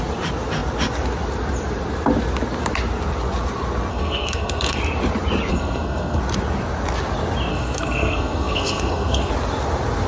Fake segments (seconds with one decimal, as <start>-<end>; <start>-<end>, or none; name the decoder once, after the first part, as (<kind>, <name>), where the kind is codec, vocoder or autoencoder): 3.9-4.8 (codec, SNAC); 5.5-6.2; 7.5-9.3